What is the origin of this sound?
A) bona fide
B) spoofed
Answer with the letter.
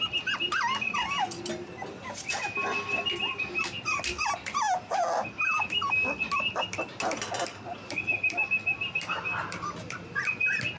A